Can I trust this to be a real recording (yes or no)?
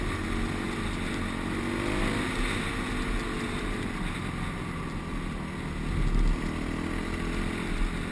yes